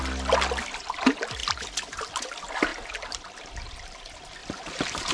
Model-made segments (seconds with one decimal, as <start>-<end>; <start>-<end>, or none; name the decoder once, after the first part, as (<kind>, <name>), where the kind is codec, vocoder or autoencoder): none